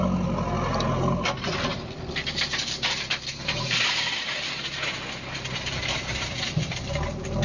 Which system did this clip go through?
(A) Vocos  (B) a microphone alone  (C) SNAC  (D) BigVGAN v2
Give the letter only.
B